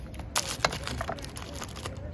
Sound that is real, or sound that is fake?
real